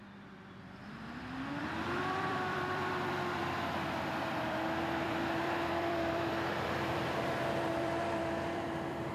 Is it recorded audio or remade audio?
remade